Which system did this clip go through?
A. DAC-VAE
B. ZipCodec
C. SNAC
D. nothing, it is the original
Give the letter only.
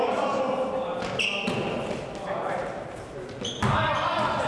D